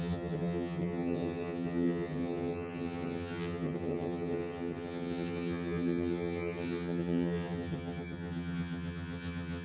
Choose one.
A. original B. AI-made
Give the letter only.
B